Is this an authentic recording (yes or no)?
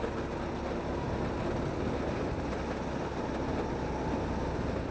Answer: yes